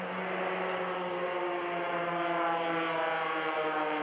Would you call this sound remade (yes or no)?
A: no